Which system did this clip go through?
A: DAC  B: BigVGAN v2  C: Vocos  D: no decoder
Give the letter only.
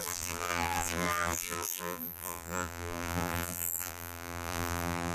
B